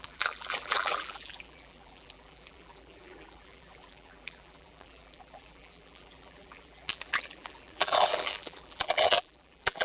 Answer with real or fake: fake